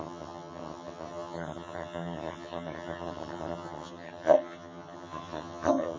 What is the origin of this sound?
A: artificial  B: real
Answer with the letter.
A